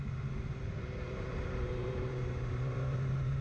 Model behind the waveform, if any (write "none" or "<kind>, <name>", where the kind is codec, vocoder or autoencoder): vocoder, BigVGAN v2